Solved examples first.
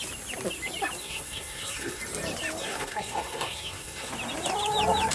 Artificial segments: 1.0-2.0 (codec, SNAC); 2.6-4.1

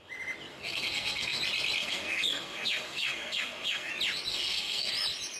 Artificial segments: 0.5-1.4 (codec, SNAC); 1.8-3.9; 4.3-4.9

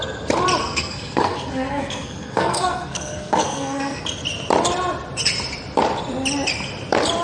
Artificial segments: 0.6-4.0 (codec, SNAC)

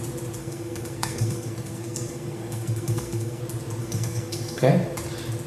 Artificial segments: 0.4-3.4 (codec, SNAC); 3.8-4.7

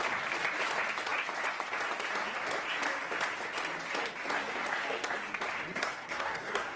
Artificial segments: 5.7-6.8 (codec, SNAC)

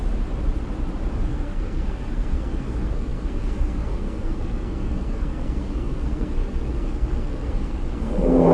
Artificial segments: 1.3-8.5 (codec, SNAC)

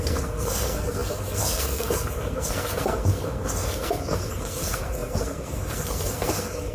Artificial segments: 0.0-6.7 (codec, SNAC)